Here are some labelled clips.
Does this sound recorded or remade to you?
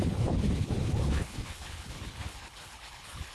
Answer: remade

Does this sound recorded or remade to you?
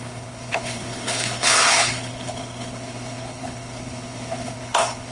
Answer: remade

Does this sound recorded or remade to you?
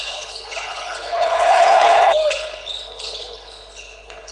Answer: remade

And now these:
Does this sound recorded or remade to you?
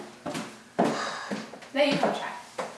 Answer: recorded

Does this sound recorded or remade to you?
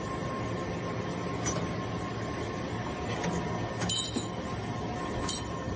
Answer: recorded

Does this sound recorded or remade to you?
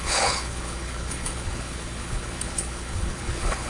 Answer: remade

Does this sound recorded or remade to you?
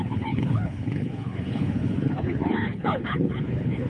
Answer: remade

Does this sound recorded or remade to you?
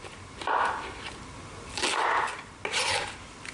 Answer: recorded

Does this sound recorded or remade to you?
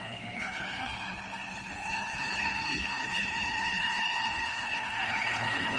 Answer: remade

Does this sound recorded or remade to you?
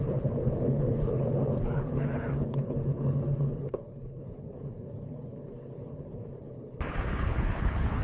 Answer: remade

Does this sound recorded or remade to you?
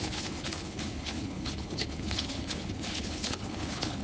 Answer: remade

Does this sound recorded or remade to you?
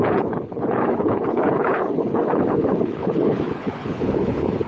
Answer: remade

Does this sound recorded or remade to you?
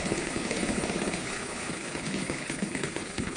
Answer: remade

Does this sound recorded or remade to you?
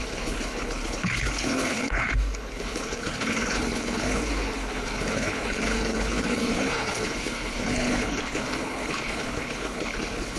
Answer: remade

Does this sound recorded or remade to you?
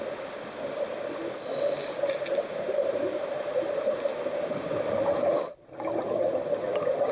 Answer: recorded